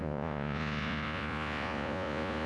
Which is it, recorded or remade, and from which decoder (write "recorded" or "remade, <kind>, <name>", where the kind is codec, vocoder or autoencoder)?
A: remade, vocoder, Vocos